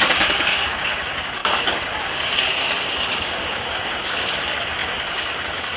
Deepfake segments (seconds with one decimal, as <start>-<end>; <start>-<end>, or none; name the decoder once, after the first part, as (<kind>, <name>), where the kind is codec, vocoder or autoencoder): 0.0-5.8 (codec, DAC)

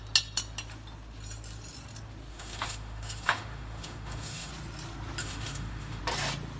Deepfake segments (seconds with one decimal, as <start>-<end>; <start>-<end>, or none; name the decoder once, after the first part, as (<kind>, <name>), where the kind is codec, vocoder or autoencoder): 2.3-4.5 (autoencoder, DAC-VAE); 5.2-6.0

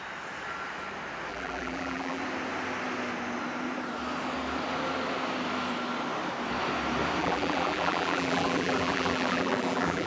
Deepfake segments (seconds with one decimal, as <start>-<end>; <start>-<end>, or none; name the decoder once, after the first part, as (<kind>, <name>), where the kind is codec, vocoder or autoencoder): 1.3-2.2 (vocoder, BigVGAN v2); 7.2-10.1

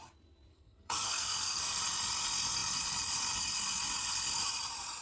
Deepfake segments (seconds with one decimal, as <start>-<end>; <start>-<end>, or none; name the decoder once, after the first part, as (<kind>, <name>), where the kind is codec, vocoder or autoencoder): 0.5-1.8 (codec, SNAC)

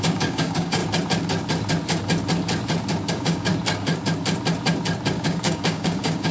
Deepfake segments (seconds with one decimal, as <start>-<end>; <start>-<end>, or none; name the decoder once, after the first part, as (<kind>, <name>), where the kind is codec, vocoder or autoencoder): 0.0-0.8 (codec, DAC); 3.1-3.5; 5.1-6.3

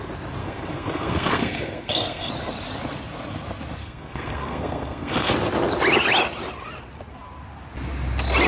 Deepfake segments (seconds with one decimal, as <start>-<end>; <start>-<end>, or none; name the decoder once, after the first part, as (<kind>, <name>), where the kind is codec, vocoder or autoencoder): 0.4-2.3 (codec, SNAC); 3.8-5.3